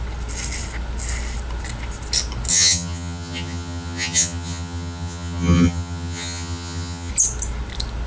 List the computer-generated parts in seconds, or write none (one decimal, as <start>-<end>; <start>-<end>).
2.5-7.1